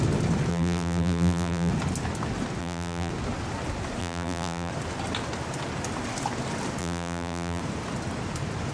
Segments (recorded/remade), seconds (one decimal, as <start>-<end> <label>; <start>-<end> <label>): 0.0-0.5 recorded; 0.5-1.7 remade; 1.7-2.6 recorded; 2.6-3.1 remade; 3.1-4.0 recorded; 4.0-4.7 remade; 4.7-6.8 recorded; 6.8-7.6 remade; 7.6-8.7 recorded